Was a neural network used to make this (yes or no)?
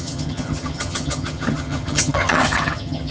yes